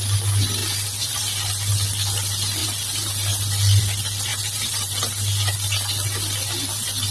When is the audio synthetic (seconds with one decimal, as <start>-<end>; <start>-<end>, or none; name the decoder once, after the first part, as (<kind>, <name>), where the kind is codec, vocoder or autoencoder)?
0.6-1.7 (vocoder, BigVGAN v2); 2.6-3.8; 4.3-4.9

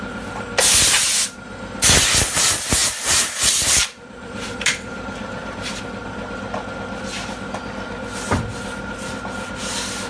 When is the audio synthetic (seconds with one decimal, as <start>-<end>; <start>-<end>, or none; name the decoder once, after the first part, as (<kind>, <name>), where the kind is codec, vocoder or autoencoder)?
2.8-5.8 (vocoder, BigVGAN v2)

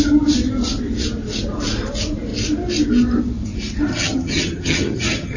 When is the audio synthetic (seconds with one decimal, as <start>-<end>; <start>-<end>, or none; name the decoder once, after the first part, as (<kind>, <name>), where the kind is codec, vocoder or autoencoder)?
3.9-5.4 (vocoder, HiFi-GAN)

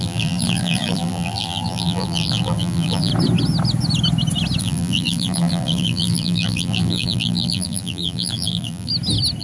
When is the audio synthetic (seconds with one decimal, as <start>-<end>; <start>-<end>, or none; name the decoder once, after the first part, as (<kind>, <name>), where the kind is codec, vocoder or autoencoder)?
0.0-3.1 (vocoder, BigVGAN v2); 4.6-8.9

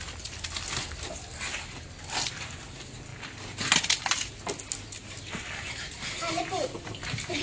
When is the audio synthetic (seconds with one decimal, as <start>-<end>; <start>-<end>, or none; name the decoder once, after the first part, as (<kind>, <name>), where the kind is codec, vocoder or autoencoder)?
none

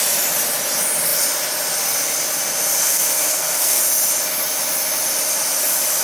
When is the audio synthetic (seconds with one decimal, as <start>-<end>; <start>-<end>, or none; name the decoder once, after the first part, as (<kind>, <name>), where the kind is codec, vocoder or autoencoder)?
2.8-3.8 (codec, SNAC)

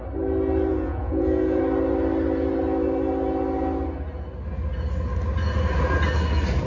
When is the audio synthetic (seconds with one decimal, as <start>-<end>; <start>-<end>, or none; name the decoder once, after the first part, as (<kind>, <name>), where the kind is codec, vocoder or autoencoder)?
0.7-1.6 (vocoder, Vocos)